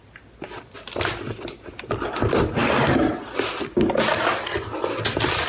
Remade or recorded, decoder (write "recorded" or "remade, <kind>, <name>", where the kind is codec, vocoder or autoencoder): recorded